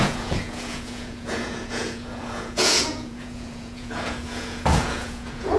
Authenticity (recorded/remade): remade